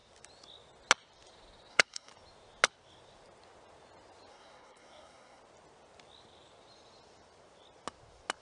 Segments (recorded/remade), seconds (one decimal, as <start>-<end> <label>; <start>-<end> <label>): 0.0-1.7 recorded; 1.7-2.1 remade; 2.1-4.3 recorded; 4.3-5.4 remade; 5.4-8.4 recorded